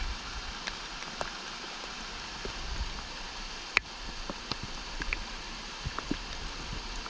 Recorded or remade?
recorded